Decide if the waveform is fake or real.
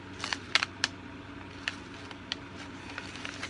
real